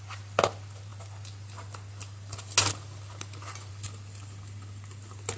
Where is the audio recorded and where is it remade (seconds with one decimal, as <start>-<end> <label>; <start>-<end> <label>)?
0.0-5.4 recorded